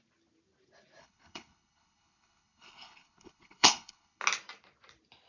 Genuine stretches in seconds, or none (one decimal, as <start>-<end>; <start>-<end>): 0.0-1.0; 4.2-5.3